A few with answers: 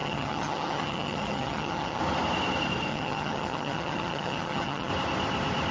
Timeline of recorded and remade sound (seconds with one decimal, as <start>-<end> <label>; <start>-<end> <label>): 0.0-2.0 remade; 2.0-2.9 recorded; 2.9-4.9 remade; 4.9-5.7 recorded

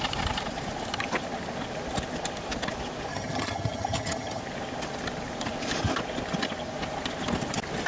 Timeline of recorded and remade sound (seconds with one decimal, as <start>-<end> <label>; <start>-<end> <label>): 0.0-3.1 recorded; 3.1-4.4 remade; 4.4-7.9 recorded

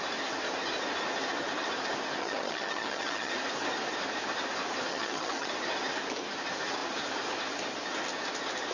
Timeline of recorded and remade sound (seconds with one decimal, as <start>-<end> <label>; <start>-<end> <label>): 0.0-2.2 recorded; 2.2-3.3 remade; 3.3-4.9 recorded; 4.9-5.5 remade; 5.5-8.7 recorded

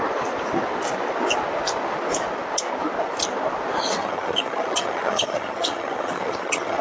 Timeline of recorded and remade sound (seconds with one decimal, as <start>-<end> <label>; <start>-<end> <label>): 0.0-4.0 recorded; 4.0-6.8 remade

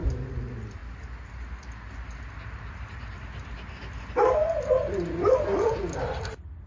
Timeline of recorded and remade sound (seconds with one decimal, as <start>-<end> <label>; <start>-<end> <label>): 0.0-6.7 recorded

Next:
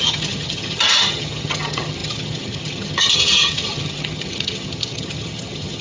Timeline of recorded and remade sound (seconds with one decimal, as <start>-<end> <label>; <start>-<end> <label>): 0.0-5.8 remade

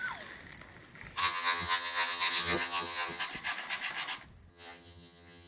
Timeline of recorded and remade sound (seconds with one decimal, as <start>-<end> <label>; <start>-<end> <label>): 0.0-1.2 recorded; 1.2-3.2 remade; 3.2-4.5 recorded; 4.5-5.5 remade

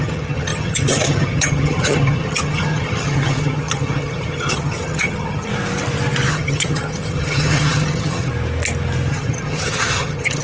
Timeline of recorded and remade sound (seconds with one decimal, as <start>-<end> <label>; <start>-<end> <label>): 0.0-5.5 remade; 5.5-6.3 recorded; 6.3-8.3 remade; 8.3-9.1 recorded; 9.1-10.4 remade